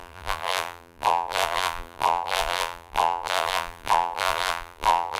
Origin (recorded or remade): remade